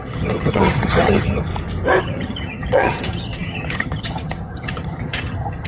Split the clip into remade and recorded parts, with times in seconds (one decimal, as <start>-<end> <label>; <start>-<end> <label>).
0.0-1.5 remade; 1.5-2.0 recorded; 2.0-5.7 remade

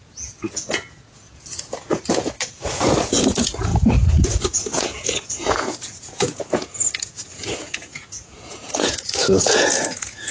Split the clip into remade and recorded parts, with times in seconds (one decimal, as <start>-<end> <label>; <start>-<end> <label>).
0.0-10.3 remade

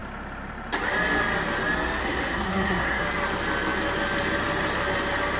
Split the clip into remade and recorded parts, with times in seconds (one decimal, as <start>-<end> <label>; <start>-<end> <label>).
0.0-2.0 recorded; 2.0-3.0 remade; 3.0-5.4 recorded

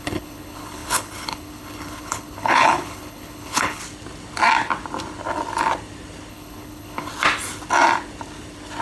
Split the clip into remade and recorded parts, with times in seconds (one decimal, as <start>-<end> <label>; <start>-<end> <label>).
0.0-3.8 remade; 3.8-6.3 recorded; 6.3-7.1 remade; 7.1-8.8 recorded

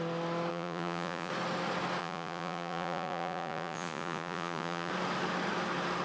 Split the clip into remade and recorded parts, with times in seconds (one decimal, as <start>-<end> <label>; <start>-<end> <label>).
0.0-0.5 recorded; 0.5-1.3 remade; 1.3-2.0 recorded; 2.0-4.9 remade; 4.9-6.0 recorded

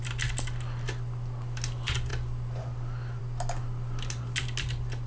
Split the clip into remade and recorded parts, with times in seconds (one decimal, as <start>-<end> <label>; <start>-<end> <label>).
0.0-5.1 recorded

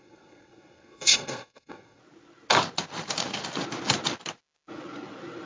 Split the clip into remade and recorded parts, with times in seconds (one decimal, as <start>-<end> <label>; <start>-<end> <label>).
0.0-2.0 remade; 2.0-5.5 recorded